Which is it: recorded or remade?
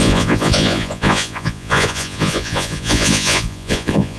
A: remade